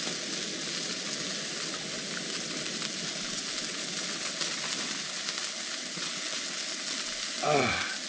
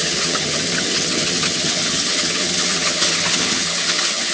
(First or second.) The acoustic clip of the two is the first